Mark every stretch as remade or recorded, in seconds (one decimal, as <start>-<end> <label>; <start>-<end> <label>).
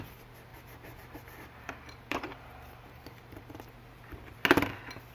0.0-0.5 recorded; 0.5-3.6 remade; 3.6-5.1 recorded